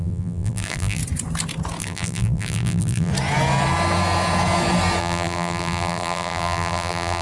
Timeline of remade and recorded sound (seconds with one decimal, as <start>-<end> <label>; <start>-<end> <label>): 0.0-1.0 remade; 1.0-1.8 recorded; 1.8-3.1 remade; 3.1-5.0 recorded; 5.0-7.2 remade